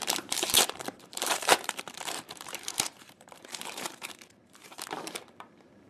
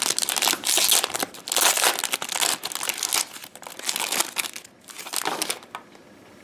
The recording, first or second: second